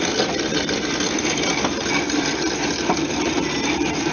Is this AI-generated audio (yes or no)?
yes